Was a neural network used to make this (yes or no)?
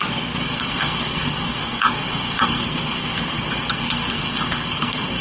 yes